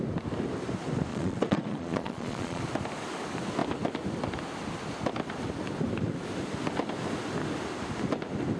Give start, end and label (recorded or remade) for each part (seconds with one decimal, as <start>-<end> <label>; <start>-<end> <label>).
0.0-1.1 recorded; 1.1-2.6 remade; 2.6-8.6 recorded